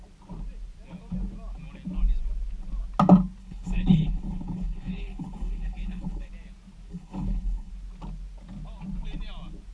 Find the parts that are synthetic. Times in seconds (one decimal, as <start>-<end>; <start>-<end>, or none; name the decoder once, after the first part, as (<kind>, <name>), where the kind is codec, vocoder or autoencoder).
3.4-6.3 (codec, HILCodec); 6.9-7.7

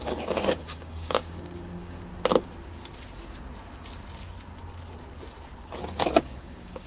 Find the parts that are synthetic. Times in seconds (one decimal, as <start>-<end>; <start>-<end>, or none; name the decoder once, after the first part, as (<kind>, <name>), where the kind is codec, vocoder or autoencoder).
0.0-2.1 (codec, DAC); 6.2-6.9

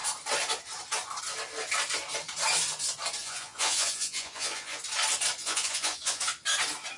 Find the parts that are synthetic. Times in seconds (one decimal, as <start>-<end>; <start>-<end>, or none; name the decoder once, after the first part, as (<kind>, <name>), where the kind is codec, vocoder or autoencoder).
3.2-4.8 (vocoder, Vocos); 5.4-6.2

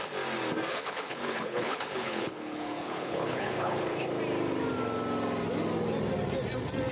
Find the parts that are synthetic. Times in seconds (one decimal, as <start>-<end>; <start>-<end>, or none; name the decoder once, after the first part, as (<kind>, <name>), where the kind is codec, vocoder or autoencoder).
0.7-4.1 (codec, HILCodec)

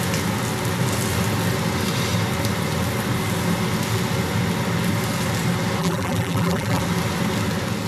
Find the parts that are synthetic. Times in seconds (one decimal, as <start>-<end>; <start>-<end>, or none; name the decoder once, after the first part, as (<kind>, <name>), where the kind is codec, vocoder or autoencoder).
5.8-6.8 (vocoder, BigVGAN v2)

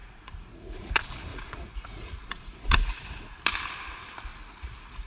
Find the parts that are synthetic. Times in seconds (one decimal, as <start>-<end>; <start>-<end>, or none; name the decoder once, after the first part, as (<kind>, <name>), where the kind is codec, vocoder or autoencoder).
0.0-0.9 (vocoder, Vocos); 1.3-3.2; 4.3-5.1